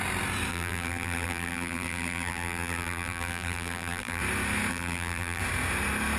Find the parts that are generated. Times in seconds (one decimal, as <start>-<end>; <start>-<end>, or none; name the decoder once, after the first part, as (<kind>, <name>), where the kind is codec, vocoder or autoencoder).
0.5-4.2 (vocoder, BigVGAN v2); 4.7-5.4

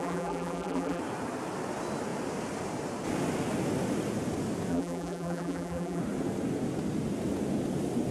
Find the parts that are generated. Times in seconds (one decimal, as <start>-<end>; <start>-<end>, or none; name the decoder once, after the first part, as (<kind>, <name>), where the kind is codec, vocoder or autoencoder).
0.0-1.0 (vocoder, BigVGAN v2); 4.7-6.0

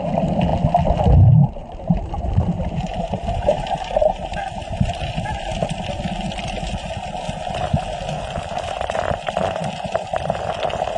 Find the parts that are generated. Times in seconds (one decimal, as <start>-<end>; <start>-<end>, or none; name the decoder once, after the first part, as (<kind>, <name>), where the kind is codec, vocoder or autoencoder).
1.6-4.3 (vocoder, BigVGAN v2)

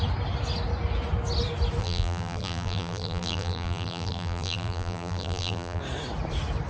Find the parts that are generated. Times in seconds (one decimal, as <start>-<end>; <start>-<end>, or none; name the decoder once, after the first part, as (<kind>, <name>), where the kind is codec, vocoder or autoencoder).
1.8-5.8 (vocoder, BigVGAN v2)

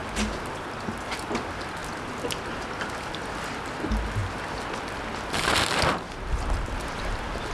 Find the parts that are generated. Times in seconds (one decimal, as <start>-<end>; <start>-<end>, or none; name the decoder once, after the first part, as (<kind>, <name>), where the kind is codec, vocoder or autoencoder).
1.4-1.8 (vocoder, BigVGAN v2); 2.8-4.2; 6.8-7.5